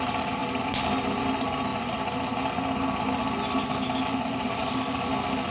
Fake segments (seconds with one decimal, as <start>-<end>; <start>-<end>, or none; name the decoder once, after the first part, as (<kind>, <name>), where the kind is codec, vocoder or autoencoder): 0.0-5.5 (vocoder, BigVGAN v2)